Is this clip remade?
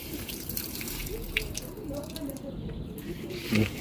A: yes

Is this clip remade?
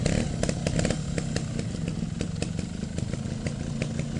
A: no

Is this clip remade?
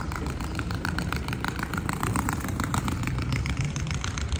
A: yes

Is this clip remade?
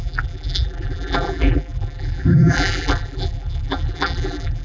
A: yes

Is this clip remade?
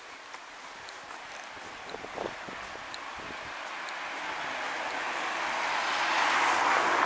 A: no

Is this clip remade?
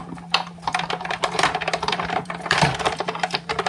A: yes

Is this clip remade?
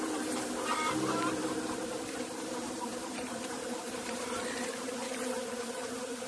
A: yes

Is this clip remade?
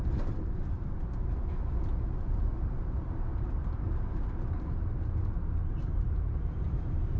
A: yes